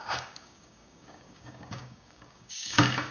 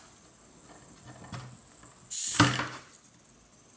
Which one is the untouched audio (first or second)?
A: second